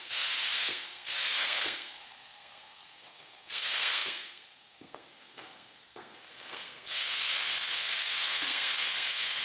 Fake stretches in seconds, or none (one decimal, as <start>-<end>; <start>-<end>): 0.0-9.4